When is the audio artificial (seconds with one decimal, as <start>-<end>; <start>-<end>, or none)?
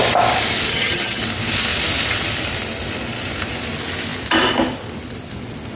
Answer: 0.7-1.2